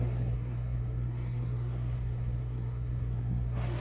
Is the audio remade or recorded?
remade